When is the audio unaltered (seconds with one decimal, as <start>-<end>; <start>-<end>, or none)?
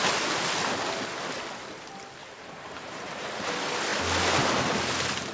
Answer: 0.0-2.2; 3.5-5.3